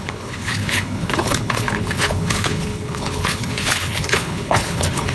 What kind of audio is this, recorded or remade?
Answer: remade